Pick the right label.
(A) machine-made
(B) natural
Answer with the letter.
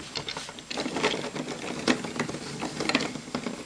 B